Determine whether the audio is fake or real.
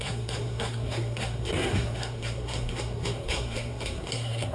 fake